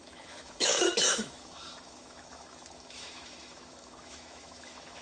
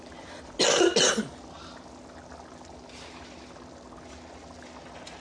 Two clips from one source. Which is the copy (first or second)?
first